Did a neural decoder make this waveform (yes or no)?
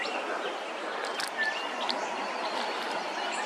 no